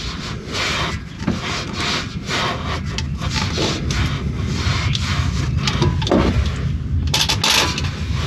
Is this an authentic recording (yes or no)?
yes